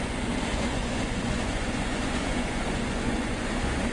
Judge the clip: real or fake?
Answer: fake